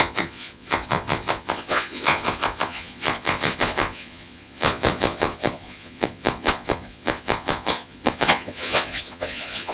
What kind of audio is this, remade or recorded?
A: remade